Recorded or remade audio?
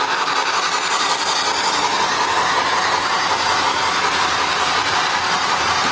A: remade